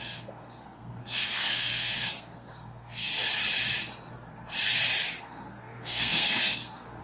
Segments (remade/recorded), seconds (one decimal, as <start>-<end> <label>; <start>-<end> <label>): 0.0-3.1 remade; 3.1-5.2 recorded; 5.2-7.0 remade